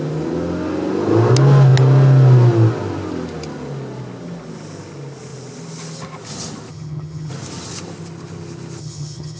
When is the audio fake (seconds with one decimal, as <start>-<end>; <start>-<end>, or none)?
6.7-7.3; 8.8-9.4

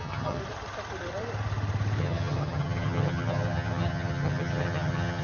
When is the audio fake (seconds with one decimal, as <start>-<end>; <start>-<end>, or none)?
0.0-0.4; 2.0-5.2

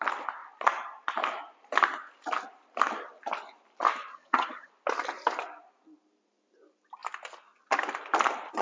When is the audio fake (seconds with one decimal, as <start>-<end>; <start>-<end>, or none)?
4.1-4.7

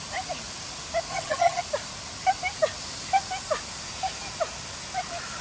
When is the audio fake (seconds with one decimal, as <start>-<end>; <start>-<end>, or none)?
1.1-1.6

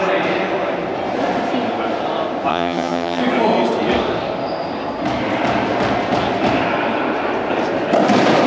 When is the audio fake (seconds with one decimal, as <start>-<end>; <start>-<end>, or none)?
2.5-3.2

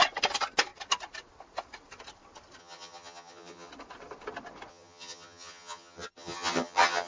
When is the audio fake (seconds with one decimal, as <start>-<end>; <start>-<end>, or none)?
2.6-3.7; 4.7-7.1